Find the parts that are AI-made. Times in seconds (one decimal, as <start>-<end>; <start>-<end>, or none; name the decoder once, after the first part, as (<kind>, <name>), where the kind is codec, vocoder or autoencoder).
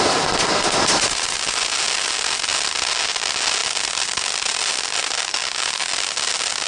5.3-5.9 (codec, DAC)